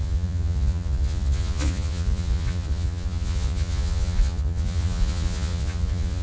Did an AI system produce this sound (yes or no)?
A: yes